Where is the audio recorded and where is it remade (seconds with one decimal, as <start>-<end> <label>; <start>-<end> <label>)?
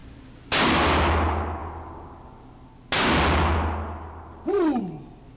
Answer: 0.0-5.4 recorded